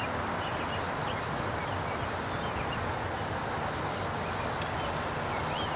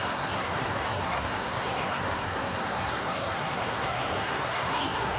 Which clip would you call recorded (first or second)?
first